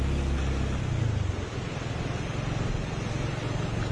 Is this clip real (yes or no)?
yes